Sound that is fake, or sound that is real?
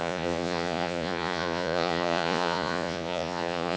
fake